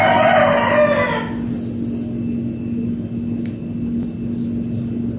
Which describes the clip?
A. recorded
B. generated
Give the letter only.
A